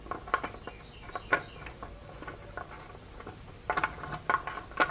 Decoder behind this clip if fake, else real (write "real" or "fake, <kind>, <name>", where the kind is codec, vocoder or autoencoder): real